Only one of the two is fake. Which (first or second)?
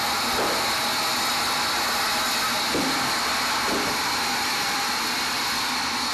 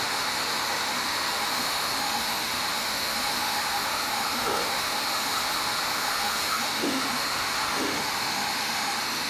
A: second